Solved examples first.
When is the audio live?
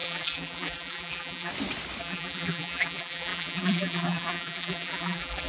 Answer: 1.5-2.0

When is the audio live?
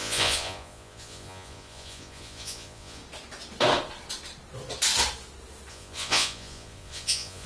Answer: 3.0-5.7